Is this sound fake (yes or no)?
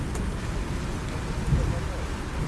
no